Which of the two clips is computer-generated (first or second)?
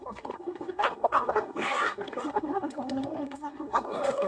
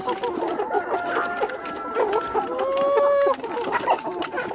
first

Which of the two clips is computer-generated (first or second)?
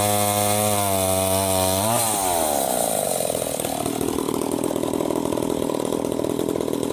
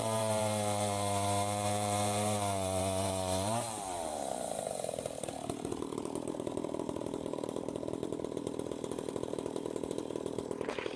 second